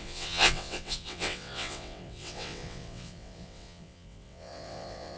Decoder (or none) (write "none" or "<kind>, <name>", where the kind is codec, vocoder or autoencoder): vocoder, WaveNeXt